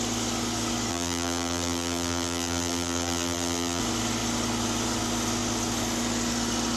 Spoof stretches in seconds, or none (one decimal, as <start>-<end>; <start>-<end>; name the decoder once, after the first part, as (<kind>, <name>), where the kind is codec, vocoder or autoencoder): 0.9-3.8 (vocoder, BigVGAN v2)